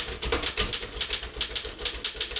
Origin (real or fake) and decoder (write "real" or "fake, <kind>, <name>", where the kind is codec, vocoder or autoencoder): real